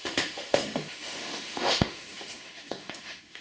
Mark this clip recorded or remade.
remade